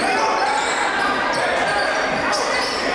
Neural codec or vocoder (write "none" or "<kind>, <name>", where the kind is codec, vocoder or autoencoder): none